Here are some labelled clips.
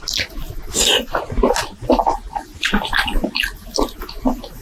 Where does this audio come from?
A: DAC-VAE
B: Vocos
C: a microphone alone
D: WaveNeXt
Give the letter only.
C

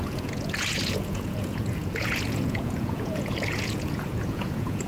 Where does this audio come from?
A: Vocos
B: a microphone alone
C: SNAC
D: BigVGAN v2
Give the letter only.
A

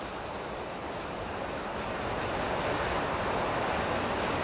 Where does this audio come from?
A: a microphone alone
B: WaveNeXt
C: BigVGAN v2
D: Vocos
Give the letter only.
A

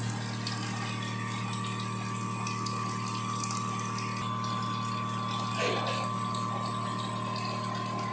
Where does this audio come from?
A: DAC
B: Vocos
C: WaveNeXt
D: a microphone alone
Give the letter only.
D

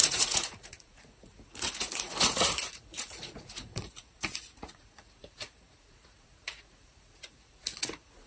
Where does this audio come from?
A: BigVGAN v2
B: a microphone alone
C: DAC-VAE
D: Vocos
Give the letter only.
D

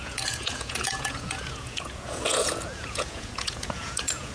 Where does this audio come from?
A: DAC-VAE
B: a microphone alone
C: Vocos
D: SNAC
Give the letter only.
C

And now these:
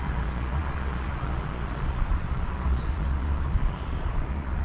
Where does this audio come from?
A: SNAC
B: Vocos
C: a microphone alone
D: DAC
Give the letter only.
B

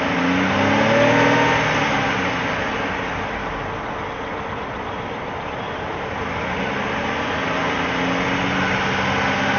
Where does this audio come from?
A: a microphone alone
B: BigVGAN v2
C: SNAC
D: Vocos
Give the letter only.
A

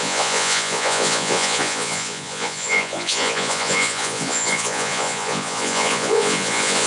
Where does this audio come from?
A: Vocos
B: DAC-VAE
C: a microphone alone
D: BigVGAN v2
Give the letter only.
A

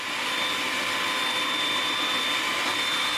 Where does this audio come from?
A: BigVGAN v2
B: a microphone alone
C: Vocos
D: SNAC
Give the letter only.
B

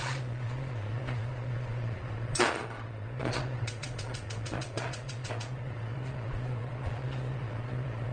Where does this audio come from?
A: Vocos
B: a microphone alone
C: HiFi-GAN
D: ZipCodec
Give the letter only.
A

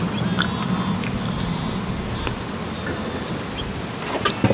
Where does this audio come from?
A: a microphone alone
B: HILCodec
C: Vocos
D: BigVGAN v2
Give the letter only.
A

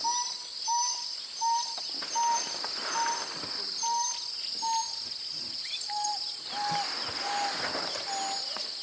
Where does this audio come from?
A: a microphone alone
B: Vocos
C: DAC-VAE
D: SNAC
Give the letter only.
A